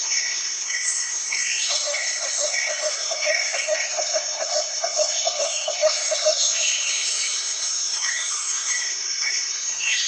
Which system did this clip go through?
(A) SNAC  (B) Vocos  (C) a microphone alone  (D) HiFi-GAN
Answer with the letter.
A